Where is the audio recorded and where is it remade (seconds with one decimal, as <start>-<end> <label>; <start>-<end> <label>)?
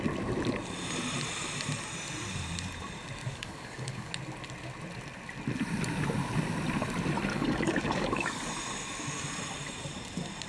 0.0-3.2 recorded; 3.2-4.1 remade; 4.1-7.3 recorded; 7.3-8.5 remade; 8.5-10.5 recorded